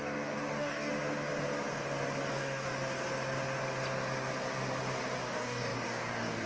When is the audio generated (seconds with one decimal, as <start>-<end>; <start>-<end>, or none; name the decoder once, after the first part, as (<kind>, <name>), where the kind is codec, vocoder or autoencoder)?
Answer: 0.0-0.9 (codec, DAC); 2.3-2.7; 5.2-6.5